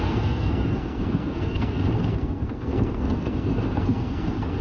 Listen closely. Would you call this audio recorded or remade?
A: remade